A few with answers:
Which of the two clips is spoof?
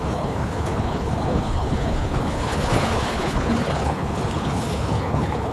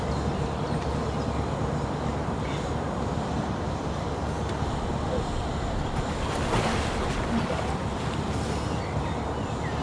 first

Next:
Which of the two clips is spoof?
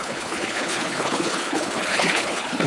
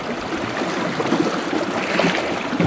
first